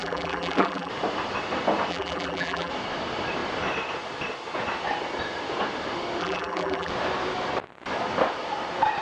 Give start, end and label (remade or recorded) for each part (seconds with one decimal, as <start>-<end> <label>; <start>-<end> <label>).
0.0-0.9 remade; 0.9-1.9 recorded; 1.9-2.7 remade; 2.7-6.2 recorded; 6.2-6.9 remade; 6.9-9.0 recorded